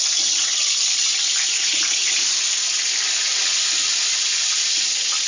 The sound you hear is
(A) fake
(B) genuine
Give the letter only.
B